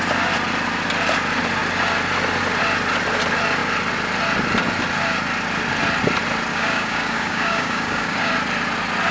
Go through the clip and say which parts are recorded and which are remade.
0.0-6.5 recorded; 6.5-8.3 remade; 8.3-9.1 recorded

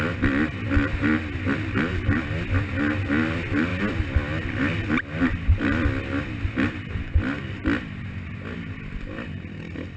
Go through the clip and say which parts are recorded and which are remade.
0.0-10.0 recorded

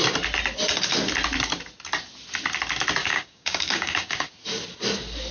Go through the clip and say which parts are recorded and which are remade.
0.0-3.0 recorded; 3.0-4.3 remade; 4.3-5.3 recorded